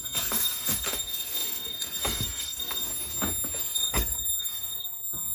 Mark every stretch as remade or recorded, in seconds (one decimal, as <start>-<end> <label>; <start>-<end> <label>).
0.0-2.9 remade; 2.9-3.6 recorded; 3.6-5.3 remade